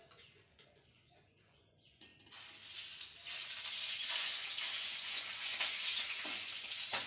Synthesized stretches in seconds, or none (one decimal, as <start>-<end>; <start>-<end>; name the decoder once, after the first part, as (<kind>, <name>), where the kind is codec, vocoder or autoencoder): 0.0-2.1 (vocoder, Vocos); 3.9-7.1